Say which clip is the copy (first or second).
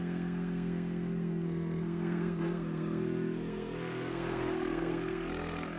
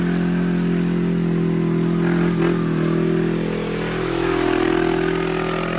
first